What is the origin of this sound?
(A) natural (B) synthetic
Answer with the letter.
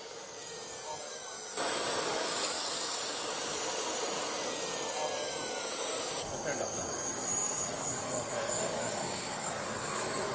B